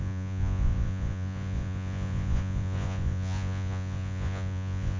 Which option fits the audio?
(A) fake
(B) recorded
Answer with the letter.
A